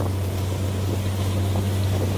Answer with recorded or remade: recorded